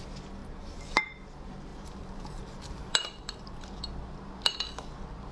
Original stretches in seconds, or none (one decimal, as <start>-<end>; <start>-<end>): 0.0-0.4; 1.0-1.7; 3.8-5.3